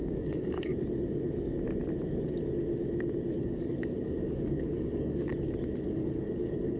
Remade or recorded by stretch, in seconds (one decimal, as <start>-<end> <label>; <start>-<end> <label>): 0.0-0.7 remade; 0.7-3.4 recorded; 3.4-5.3 remade; 5.3-5.9 recorded; 5.9-6.8 remade